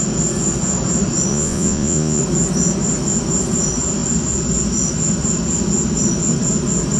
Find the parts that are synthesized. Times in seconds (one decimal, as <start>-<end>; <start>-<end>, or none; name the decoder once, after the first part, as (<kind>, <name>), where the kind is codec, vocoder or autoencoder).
1.3-2.2 (vocoder, Vocos)